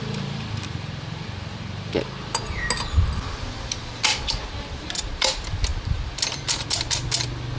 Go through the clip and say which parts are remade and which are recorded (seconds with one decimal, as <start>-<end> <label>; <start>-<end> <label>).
0.0-7.6 recorded